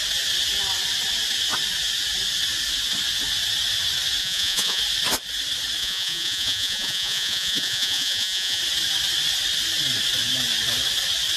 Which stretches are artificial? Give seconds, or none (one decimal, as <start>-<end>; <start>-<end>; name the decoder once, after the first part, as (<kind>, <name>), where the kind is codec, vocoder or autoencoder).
4.2-4.8 (vocoder, Vocos); 5.8-8.6